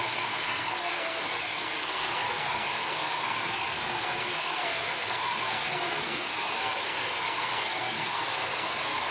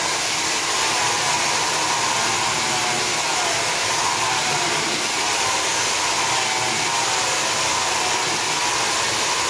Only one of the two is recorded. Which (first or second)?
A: second